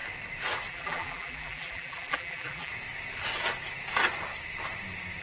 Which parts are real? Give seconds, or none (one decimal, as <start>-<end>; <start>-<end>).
0.0-0.7; 2.7-5.2